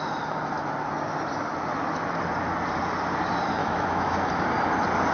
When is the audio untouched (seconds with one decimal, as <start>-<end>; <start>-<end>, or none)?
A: 0.0-3.6; 4.3-5.1